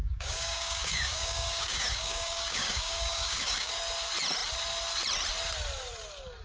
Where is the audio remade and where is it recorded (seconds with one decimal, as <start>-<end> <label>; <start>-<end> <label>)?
0.0-3.7 remade; 3.7-6.4 recorded